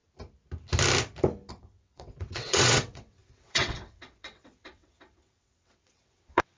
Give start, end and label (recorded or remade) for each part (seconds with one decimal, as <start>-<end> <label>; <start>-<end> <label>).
0.0-1.5 recorded; 1.5-6.6 remade